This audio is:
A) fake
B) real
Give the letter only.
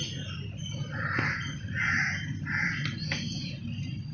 B